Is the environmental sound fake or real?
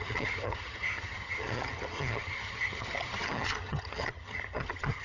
fake